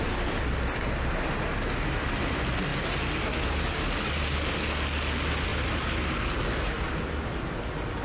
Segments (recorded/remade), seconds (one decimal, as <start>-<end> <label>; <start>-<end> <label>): 0.0-8.0 recorded